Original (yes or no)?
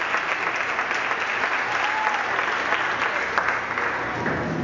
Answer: yes